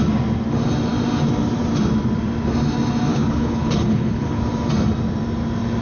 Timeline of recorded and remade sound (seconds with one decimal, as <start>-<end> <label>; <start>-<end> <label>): 0.0-3.1 recorded; 3.1-4.4 remade; 4.4-5.8 recorded